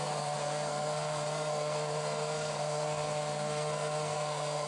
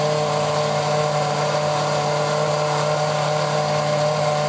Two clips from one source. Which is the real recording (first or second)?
second